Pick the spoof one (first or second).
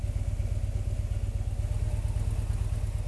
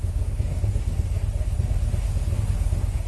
second